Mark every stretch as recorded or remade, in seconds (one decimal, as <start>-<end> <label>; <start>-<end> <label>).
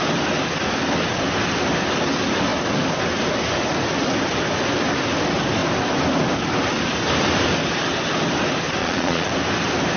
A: 0.0-8.8 recorded; 8.8-9.3 remade; 9.3-10.0 recorded